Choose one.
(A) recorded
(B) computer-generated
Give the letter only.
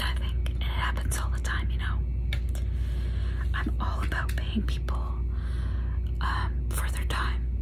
A